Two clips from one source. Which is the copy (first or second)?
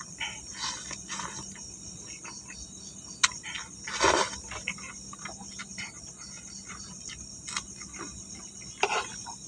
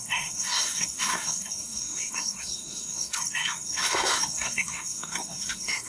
second